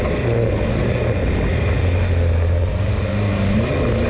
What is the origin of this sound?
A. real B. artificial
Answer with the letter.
A